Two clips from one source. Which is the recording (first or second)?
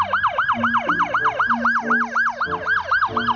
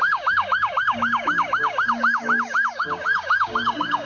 first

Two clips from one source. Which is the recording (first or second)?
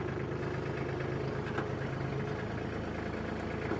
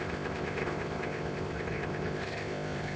first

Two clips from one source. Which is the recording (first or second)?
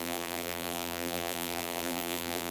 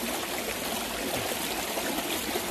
second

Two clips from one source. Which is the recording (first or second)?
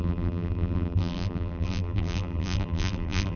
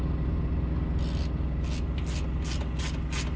second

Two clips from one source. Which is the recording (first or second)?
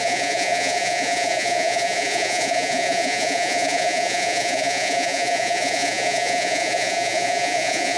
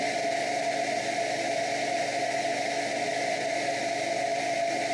second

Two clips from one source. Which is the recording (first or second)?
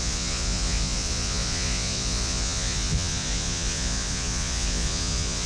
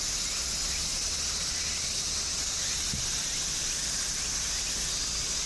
second